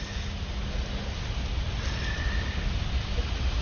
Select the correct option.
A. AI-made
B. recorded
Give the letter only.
B